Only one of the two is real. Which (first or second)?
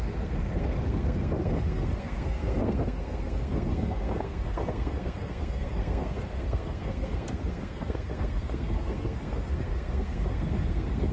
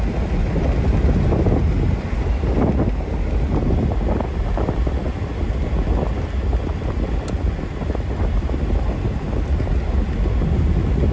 second